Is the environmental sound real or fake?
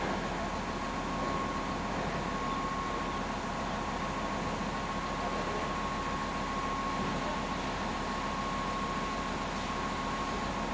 real